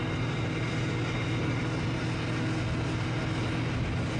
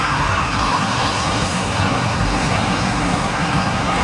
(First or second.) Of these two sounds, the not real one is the second